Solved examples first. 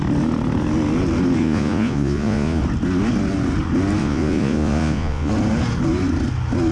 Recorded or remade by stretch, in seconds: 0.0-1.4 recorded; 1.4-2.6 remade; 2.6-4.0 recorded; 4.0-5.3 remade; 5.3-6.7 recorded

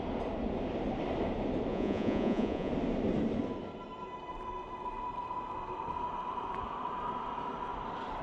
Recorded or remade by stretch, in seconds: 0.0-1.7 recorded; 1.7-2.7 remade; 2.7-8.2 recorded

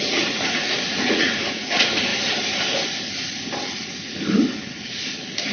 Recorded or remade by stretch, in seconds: 0.0-2.1 remade; 2.1-5.5 recorded

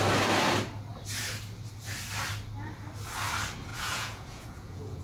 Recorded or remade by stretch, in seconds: 0.0-3.7 recorded; 3.7-5.0 remade